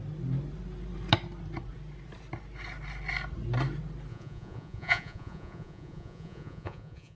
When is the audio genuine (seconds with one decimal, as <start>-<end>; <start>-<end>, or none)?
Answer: 0.0-4.1